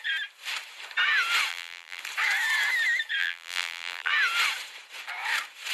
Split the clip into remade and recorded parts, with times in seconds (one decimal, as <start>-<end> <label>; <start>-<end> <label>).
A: 0.0-1.5 recorded; 1.5-2.0 remade; 2.0-3.2 recorded; 3.2-4.1 remade; 4.1-5.7 recorded